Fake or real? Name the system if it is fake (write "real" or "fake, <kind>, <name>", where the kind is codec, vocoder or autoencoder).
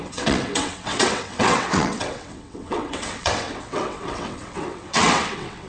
fake, vocoder, WaveNeXt